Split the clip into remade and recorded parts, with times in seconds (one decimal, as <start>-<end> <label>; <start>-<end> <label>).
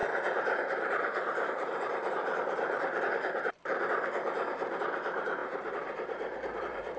0.0-7.0 remade